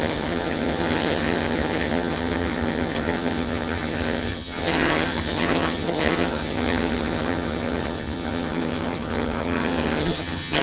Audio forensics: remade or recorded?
remade